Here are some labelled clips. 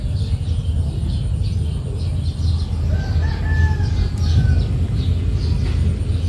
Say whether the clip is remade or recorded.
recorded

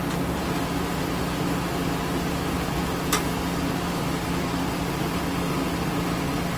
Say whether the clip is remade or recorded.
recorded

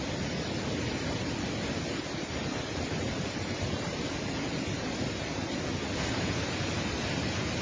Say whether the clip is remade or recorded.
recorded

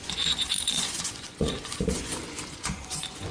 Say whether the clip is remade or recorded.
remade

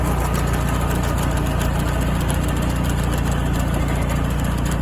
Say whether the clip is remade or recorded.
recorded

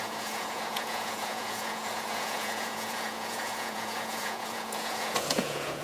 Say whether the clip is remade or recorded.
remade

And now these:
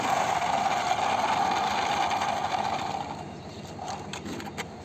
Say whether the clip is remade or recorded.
recorded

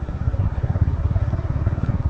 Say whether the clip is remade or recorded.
remade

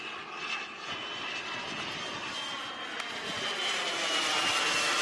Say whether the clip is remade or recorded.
recorded